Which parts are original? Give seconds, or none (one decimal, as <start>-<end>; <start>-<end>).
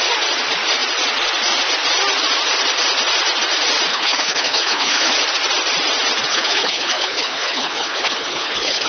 0.0-3.9; 5.1-6.3